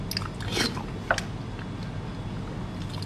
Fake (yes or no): no